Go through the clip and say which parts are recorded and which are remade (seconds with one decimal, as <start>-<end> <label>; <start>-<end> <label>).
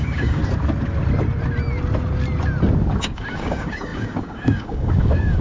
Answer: 0.0-0.4 remade; 0.4-3.0 recorded; 3.0-5.4 remade